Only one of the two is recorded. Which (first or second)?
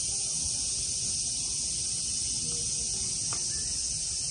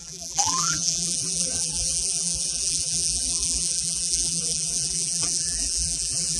first